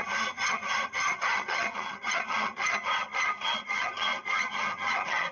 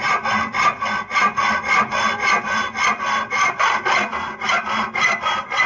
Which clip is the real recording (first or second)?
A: second